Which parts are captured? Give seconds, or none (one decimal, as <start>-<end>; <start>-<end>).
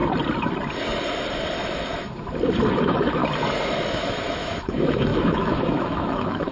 0.0-2.7; 3.2-3.9